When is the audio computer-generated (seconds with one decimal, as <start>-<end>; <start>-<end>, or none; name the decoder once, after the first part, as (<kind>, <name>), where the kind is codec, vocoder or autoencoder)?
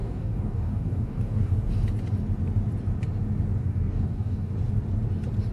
0.0-1.6 (codec, DAC); 3.6-4.5